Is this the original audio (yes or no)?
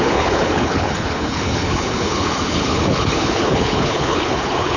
no